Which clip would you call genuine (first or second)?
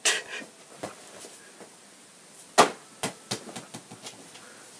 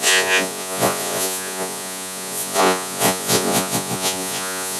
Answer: first